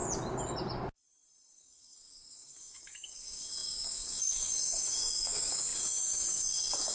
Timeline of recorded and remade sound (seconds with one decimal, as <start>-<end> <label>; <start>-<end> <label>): 0.0-1.6 recorded; 1.6-6.9 remade